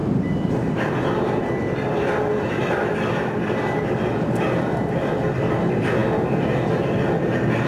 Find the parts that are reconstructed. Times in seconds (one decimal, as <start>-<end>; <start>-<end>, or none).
0.0-1.4; 2.6-3.1